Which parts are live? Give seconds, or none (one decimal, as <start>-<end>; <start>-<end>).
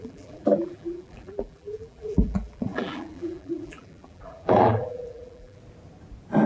5.6-6.5